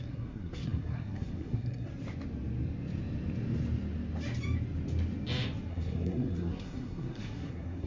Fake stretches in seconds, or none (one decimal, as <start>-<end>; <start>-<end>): 0.0-1.9; 5.7-7.9